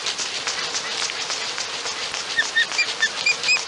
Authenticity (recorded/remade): recorded